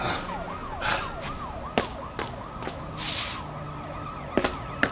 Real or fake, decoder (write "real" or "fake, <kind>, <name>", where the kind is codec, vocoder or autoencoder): real